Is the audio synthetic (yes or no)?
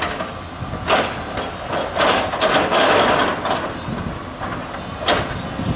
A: no